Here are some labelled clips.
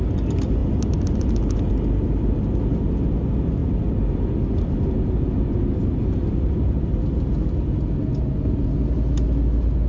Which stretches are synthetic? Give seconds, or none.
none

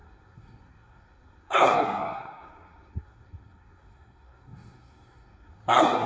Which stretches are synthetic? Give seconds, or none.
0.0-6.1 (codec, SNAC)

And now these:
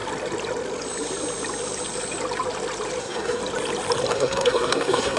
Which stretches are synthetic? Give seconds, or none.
3.0-3.4 (codec, SNAC); 4.1-5.2

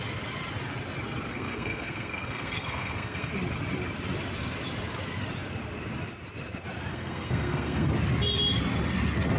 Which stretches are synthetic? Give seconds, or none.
1.3-3.3 (codec, SNAC); 6.9-7.9

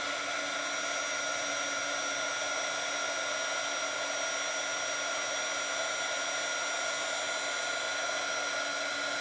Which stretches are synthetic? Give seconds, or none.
none

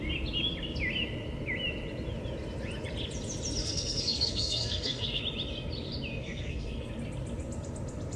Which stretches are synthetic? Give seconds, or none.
3.6-5.2 (codec, SNAC); 6.2-6.9

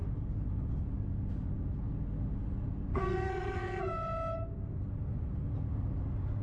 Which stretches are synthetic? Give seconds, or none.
2.9-3.8 (codec, SNAC)

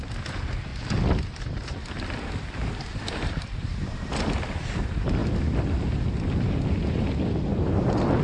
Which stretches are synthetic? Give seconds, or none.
none